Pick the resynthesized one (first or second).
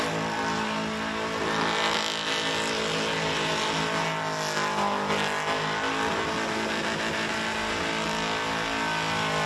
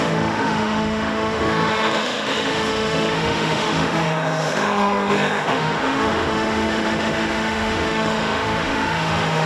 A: second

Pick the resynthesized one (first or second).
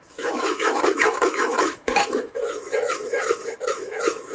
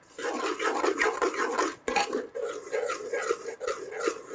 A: first